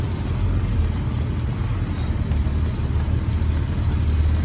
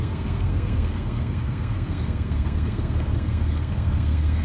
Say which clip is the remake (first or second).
second